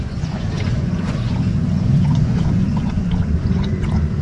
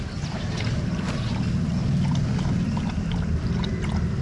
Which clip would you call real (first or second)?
second